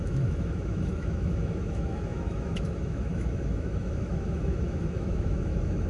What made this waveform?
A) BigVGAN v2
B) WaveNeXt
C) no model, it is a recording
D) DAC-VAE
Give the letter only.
D